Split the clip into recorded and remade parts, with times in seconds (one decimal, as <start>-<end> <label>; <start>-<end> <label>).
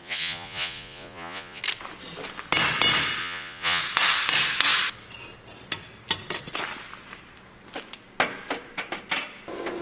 0.0-1.6 remade; 1.6-3.2 recorded; 3.2-3.8 remade; 3.8-9.8 recorded